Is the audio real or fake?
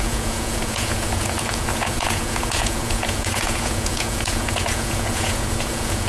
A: fake